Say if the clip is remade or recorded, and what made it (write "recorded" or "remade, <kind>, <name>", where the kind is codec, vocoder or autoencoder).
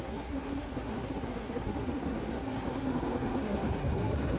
remade, codec, SNAC